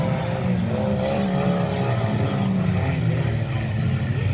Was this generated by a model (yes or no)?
no